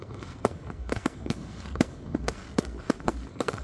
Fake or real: fake